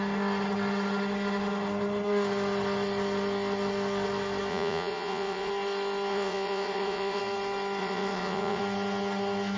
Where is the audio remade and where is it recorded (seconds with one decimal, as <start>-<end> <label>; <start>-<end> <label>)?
0.0-4.5 recorded; 4.5-5.5 remade; 5.5-6.1 recorded; 6.1-7.2 remade; 7.2-7.8 recorded; 7.8-8.6 remade; 8.6-9.6 recorded